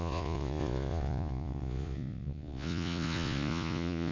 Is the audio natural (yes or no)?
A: no